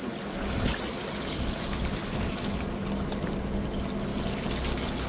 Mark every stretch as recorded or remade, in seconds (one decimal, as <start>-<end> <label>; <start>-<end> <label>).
0.0-5.1 recorded